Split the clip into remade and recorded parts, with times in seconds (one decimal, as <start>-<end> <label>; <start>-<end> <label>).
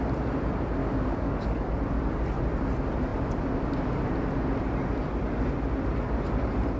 0.0-0.8 recorded; 0.8-1.7 remade; 1.7-6.8 recorded